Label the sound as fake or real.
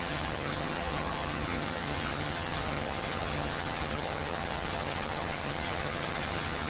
fake